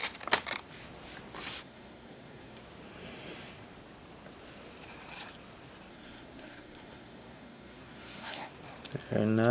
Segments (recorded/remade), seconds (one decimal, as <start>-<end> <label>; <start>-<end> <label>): 0.0-1.6 recorded; 1.6-2.6 remade; 2.6-5.9 recorded; 5.9-8.5 remade; 8.5-9.5 recorded